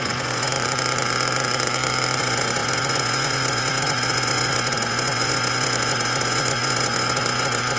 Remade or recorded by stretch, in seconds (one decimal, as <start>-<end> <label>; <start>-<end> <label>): 0.0-0.5 remade; 0.5-2.2 recorded; 2.2-7.8 remade